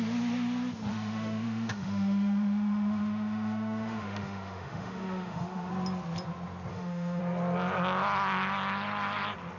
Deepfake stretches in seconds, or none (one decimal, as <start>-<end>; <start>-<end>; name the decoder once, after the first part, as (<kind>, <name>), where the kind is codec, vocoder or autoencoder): 0.9-5.7 (autoencoder, DAC-VAE); 6.7-7.2